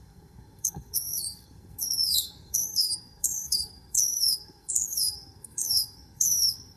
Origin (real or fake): fake